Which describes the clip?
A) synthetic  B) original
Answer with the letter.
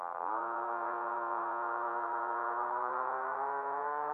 A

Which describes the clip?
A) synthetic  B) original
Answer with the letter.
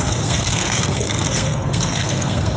A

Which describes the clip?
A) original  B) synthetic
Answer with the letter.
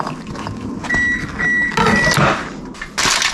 A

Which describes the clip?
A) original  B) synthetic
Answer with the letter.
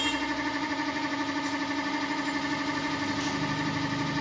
A